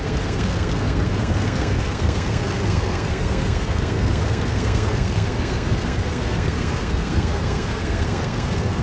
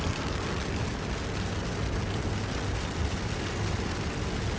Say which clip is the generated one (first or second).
first